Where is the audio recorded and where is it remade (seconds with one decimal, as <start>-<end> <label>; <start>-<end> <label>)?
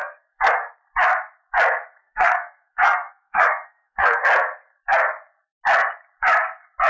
0.0-0.6 remade; 0.6-2.0 recorded; 2.0-4.2 remade; 4.2-6.9 recorded